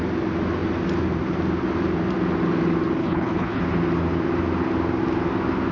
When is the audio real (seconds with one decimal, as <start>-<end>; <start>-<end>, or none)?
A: 0.0-3.0; 3.6-5.7